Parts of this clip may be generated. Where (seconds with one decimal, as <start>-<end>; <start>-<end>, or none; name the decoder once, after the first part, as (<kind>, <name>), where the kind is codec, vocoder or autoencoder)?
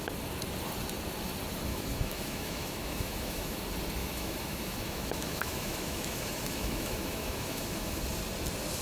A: 1.7-3.6 (autoencoder, DAC-VAE); 4.0-8.0